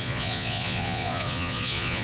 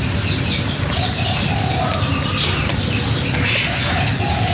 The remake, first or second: first